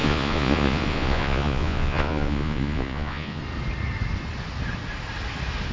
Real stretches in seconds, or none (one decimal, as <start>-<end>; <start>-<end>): 3.4-5.7